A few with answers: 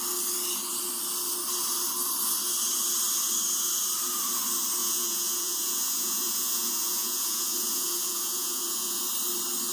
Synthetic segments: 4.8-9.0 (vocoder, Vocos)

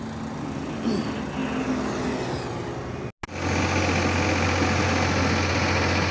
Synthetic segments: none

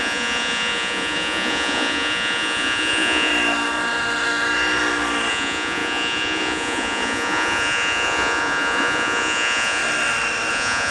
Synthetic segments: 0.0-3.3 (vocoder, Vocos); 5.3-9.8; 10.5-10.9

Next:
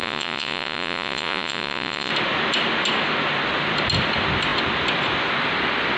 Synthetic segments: 0.0-2.1 (vocoder, Vocos)

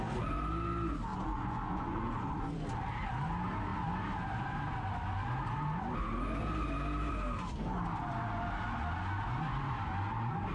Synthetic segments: 1.1-2.5 (vocoder, Vocos)

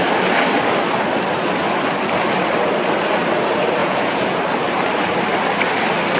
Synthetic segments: 3.8-4.4 (vocoder, Vocos)